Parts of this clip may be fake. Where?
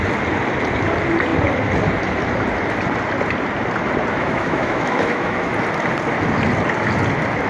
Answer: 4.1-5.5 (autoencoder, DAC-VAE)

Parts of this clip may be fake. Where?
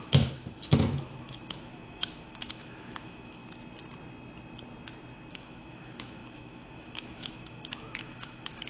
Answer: 0.0-3.4 (autoencoder, DAC-VAE); 5.3-8.7